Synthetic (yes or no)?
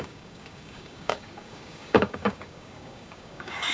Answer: yes